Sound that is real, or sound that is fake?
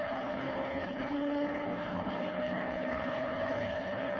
fake